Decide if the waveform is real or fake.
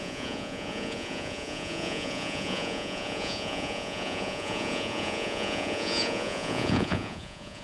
fake